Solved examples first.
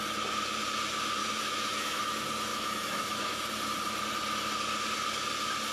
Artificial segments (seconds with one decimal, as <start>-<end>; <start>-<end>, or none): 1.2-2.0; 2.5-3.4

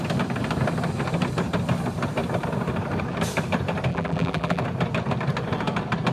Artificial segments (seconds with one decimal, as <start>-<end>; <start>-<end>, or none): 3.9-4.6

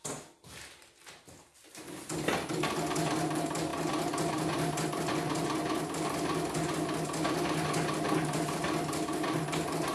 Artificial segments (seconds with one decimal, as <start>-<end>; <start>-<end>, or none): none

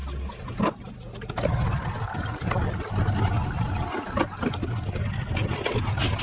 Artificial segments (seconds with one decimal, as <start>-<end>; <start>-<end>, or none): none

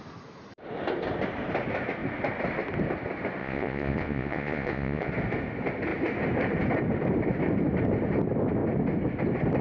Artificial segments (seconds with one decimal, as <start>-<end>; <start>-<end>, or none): 3.4-5.1

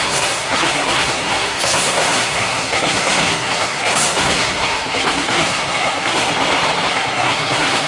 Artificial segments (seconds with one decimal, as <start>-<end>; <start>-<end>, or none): 0.0-6.3; 6.9-7.9

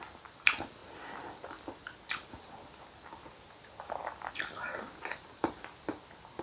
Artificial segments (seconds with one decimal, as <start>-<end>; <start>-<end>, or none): none